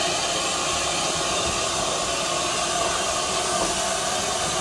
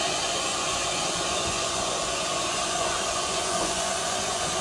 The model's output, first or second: second